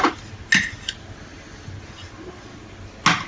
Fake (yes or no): no